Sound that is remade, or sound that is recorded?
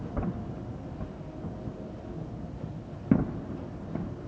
recorded